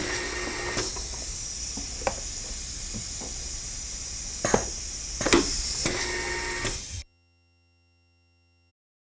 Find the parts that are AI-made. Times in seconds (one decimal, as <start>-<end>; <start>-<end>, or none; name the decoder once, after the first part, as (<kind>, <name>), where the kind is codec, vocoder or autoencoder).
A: 6.8-8.7 (vocoder, HiFi-GAN)